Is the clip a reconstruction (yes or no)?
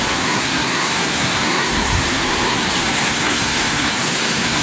yes